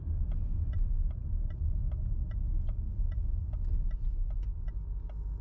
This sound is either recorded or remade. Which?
recorded